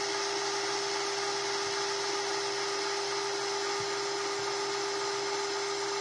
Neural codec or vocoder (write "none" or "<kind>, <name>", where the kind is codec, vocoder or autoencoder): none